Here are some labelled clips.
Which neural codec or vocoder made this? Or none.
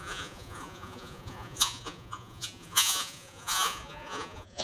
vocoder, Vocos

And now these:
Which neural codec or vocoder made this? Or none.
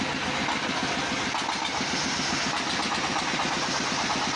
none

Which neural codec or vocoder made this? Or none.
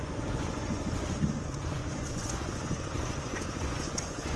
vocoder, Vocos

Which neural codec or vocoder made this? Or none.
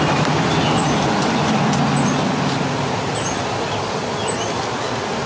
none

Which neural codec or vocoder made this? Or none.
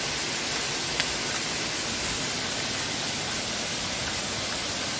none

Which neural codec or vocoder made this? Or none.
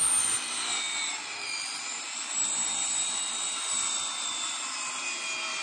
none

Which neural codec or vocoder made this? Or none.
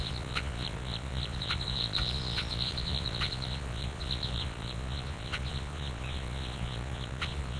vocoder, Vocos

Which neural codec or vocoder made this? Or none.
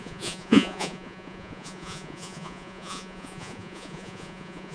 vocoder, Vocos